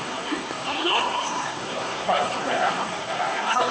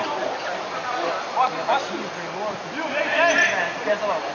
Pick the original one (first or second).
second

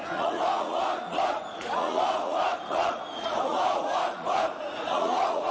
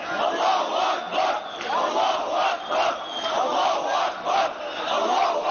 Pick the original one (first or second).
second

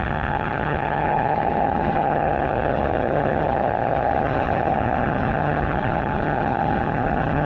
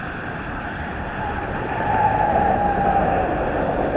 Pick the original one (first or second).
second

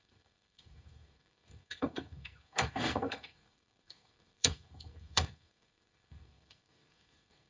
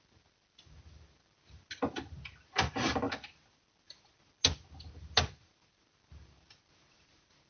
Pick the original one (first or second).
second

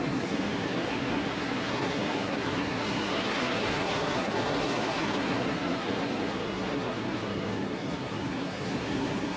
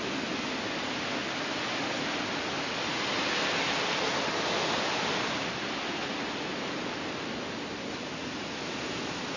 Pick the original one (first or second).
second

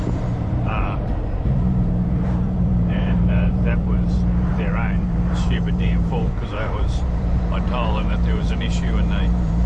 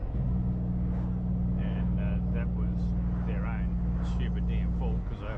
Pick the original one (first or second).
second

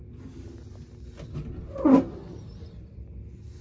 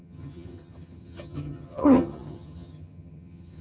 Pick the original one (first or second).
first